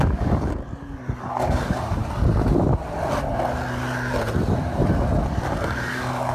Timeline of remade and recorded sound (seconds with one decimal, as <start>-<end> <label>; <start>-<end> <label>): 0.0-0.6 remade; 0.6-1.2 recorded; 1.2-2.0 remade; 2.0-5.5 recorded; 5.5-6.3 remade